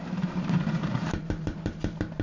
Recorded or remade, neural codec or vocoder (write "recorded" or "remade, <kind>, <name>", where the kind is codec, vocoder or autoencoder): remade, vocoder, BigVGAN v2